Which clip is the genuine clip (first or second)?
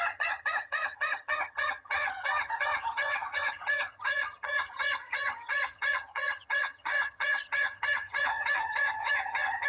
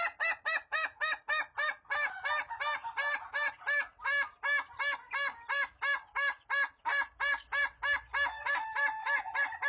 second